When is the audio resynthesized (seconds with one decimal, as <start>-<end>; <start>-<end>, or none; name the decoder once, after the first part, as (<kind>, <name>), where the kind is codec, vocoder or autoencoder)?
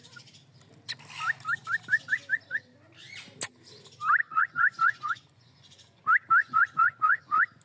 4.2-6.0 (vocoder, Vocos); 6.4-7.6